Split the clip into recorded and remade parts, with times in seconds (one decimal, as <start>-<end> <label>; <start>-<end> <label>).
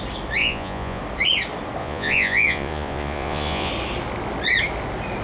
0.0-0.4 recorded; 0.4-1.0 remade; 1.0-1.8 recorded; 1.8-3.7 remade; 3.7-5.2 recorded